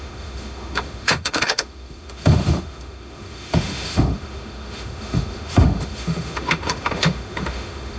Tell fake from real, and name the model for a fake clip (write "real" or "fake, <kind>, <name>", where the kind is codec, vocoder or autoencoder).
fake, autoencoder, DAC-VAE